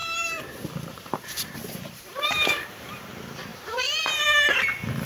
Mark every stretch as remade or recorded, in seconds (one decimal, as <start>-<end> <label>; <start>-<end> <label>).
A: 0.0-3.1 remade; 3.1-3.5 recorded; 3.5-4.2 remade; 4.2-5.1 recorded